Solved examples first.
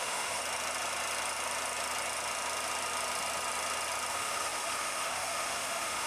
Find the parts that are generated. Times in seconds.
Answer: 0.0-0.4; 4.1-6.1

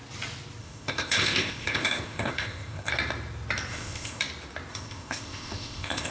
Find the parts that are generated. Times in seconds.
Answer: 0.6-2.9; 3.7-4.2; 4.7-6.1

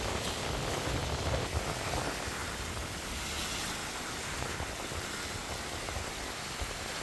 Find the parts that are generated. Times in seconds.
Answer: none

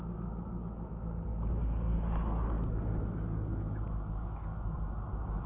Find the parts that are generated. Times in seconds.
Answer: 0.0-0.9; 1.6-4.9

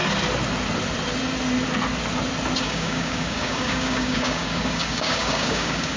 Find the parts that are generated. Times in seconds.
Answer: 2.6-6.0

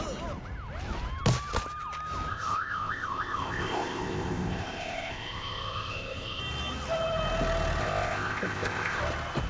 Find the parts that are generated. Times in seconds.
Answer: 2.3-6.4; 7.8-9.0

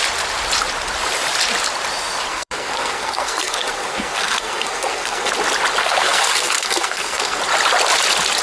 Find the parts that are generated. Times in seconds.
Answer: 2.3-5.3; 5.8-7.4

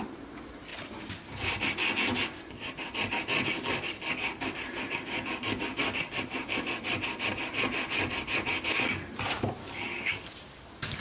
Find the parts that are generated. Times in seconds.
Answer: 9.6-11.0